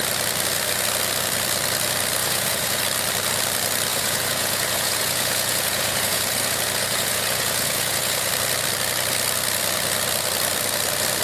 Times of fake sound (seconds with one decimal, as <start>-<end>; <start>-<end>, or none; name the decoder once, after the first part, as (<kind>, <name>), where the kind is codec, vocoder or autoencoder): 2.2-2.8 (vocoder, Vocos); 3.9-8.3